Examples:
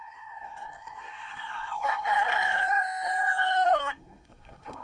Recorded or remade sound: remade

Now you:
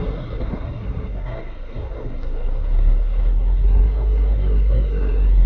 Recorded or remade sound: remade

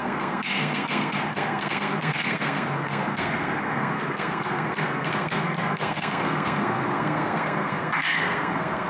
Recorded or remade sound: remade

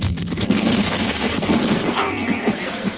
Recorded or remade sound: remade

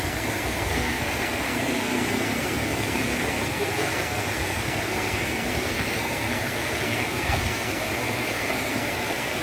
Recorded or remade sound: remade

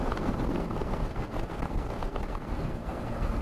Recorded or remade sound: remade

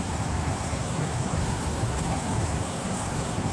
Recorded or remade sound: remade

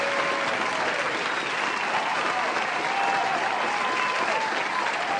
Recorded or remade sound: recorded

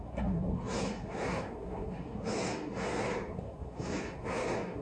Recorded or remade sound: remade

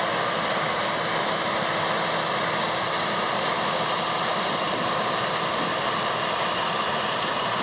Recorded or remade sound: recorded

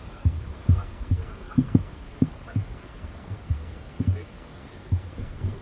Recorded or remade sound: remade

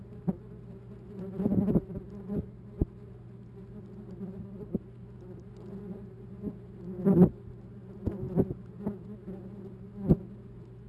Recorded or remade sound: recorded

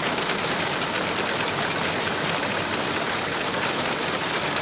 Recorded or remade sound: recorded